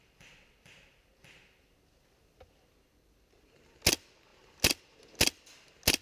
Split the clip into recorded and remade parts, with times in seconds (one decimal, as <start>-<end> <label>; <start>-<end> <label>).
0.0-6.0 recorded